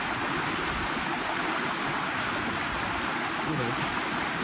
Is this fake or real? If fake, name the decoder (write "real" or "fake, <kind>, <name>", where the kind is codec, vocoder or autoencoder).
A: real